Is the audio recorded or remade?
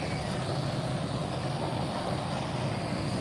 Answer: recorded